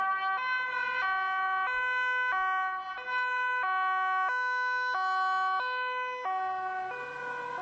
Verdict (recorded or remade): recorded